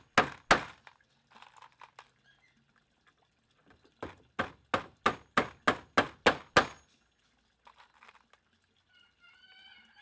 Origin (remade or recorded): recorded